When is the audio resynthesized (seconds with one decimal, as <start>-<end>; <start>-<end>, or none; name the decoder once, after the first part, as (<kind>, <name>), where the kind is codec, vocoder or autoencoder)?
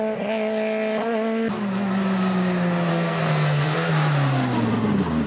2.9-3.9 (codec, SNAC)